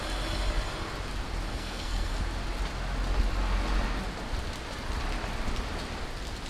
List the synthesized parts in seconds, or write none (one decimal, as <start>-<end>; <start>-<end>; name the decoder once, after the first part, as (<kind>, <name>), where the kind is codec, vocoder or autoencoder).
1.5-2.1 (codec, SNAC)